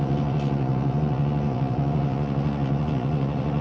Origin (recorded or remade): remade